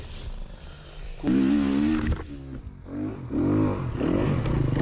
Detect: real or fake real